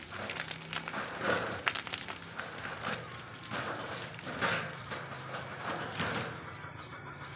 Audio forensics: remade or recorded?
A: recorded